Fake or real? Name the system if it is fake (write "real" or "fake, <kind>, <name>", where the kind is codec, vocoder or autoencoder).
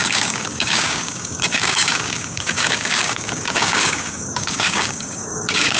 fake, codec, DAC